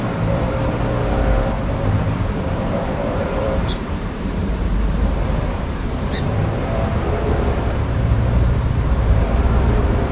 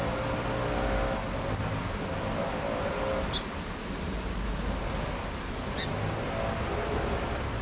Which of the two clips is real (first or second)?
second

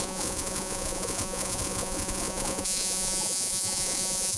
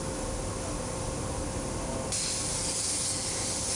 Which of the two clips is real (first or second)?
second